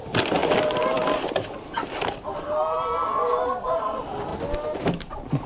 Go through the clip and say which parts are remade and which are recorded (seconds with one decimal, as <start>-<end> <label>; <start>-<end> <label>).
0.0-5.5 recorded